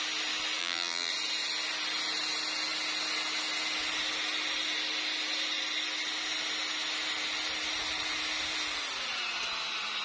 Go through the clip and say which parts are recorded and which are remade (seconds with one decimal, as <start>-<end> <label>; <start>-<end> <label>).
0.0-0.6 recorded; 0.6-1.1 remade; 1.1-10.0 recorded